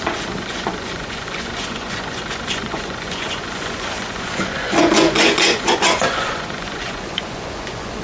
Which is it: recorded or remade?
remade